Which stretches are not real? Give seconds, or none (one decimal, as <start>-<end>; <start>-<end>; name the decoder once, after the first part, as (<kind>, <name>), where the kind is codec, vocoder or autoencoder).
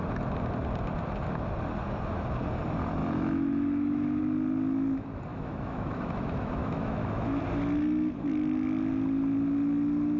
3.0-4.2 (autoencoder, DAC-VAE); 5.3-7.4